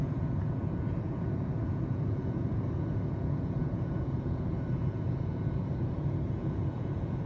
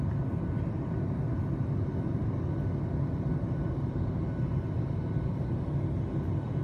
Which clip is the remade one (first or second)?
first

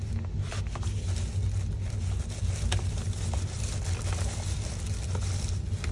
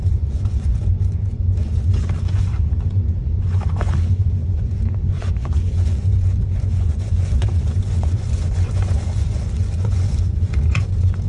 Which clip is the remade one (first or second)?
second